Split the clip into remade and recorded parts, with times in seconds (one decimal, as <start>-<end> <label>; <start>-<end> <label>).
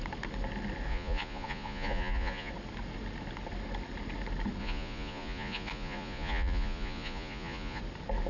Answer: 0.0-0.9 recorded; 0.9-2.5 remade; 2.5-4.6 recorded; 4.6-7.8 remade; 7.8-8.3 recorded